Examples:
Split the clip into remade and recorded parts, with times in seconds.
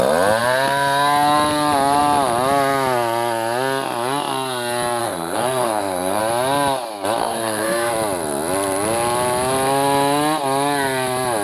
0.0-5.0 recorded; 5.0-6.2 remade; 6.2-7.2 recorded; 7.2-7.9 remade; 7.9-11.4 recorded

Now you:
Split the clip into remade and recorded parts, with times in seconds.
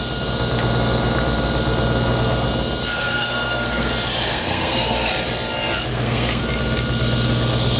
0.0-2.9 recorded; 2.9-3.9 remade; 3.9-4.3 recorded; 4.3-5.1 remade; 5.1-5.9 recorded; 5.9-6.4 remade; 6.4-7.8 recorded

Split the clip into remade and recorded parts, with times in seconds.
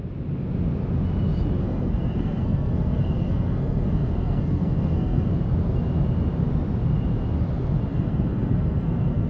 0.0-1.6 recorded; 1.6-5.3 remade; 5.3-7.9 recorded; 7.9-9.3 remade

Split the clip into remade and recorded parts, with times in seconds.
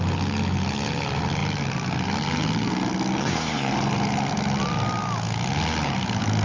0.0-3.2 recorded; 3.2-3.7 remade; 3.7-6.4 recorded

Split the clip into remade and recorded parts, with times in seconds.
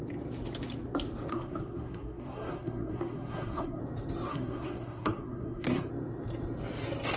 0.0-1.3 recorded; 1.3-3.8 remade; 3.8-4.3 recorded; 4.3-5.9 remade; 5.9-7.2 recorded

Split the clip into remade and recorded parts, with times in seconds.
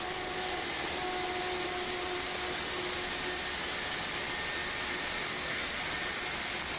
0.0-5.3 recorded; 5.3-5.8 remade; 5.8-6.8 recorded